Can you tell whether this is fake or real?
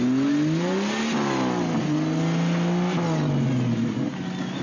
real